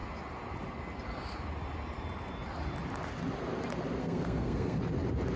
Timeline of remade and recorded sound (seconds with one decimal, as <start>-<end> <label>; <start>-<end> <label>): 0.0-4.0 recorded; 4.0-4.8 remade; 4.8-5.4 recorded

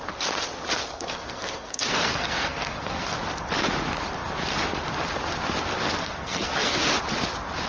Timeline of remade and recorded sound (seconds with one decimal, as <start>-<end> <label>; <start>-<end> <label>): 0.0-0.8 recorded; 0.8-3.2 remade; 3.2-6.0 recorded; 6.0-6.8 remade; 6.8-7.7 recorded

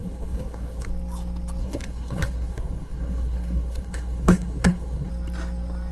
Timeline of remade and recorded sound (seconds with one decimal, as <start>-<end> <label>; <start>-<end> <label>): 0.0-0.9 remade; 0.9-1.6 recorded; 1.6-5.1 remade; 5.1-5.9 recorded

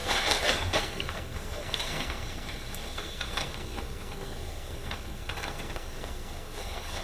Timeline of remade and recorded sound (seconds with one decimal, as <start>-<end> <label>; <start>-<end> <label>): 0.0-7.0 remade

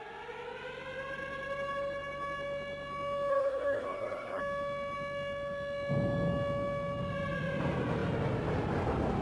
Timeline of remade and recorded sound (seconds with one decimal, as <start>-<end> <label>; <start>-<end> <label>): 0.0-3.3 recorded; 3.3-4.4 remade; 4.4-9.2 recorded

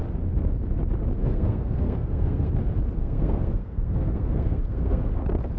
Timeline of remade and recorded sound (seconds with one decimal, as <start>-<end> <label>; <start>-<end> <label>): 0.0-1.2 recorded; 1.2-2.5 remade; 2.5-3.0 recorded; 3.0-5.0 remade; 5.0-5.6 recorded

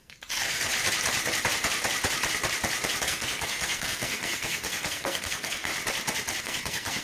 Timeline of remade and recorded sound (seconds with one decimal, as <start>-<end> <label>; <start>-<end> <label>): 0.0-0.7 remade; 0.7-3.0 recorded; 3.0-5.7 remade; 5.7-6.4 recorded; 6.4-7.0 remade

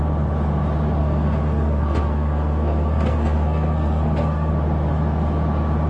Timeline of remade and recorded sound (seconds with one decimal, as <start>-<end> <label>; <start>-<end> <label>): 0.0-1.0 recorded; 1.0-4.5 remade; 4.5-5.9 recorded